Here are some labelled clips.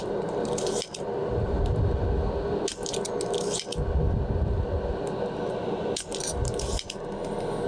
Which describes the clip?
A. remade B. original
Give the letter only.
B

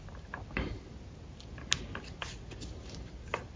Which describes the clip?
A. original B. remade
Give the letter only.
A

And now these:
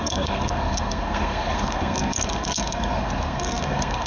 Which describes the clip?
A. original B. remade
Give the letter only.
B